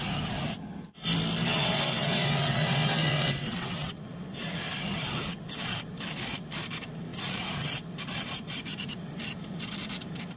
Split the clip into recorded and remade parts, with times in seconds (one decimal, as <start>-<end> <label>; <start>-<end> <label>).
0.0-1.4 recorded; 1.4-4.0 remade; 4.0-10.4 recorded